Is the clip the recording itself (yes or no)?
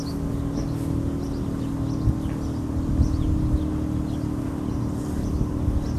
yes